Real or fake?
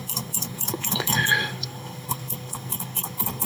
fake